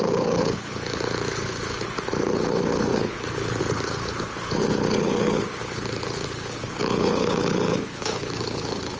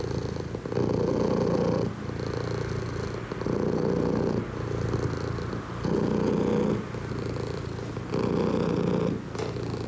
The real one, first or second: second